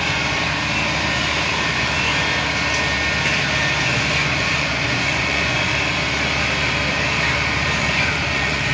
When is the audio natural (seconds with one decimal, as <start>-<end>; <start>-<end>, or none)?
0.5-1.7; 2.1-3.8; 5.7-7.8